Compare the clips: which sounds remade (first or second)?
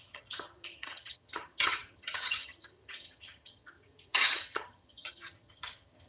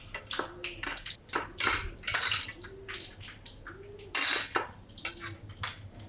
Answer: first